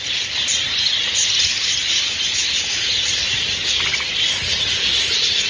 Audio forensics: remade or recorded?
recorded